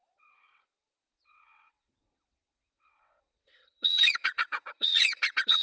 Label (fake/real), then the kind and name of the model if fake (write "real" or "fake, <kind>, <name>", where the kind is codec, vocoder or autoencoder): fake, vocoder, WaveNeXt